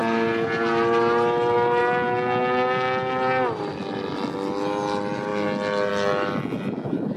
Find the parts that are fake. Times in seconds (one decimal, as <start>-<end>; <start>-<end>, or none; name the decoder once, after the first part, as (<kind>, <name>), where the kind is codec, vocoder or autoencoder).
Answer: none